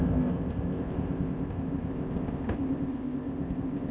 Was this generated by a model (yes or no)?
yes